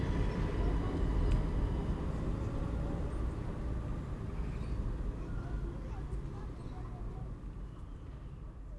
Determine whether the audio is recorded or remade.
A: recorded